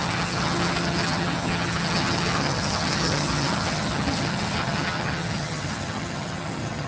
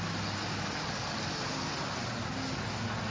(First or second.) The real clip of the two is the second